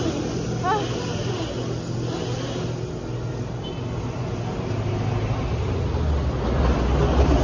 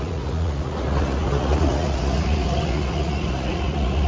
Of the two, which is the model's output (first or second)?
second